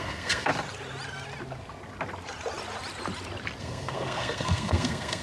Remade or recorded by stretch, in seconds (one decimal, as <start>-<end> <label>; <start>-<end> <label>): 0.0-0.5 remade; 0.5-3.6 recorded; 3.6-5.2 remade